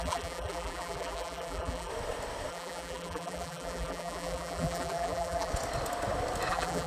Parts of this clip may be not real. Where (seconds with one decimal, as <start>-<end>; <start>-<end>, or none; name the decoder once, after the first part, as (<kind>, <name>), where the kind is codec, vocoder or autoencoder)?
0.0-1.9 (vocoder, BigVGAN v2); 2.5-5.5; 6.5-6.9